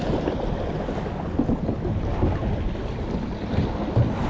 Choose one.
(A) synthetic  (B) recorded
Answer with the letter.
B